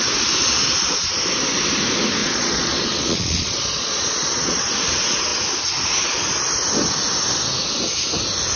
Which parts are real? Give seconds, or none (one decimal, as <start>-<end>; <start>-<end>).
0.0-2.2; 4.7-8.6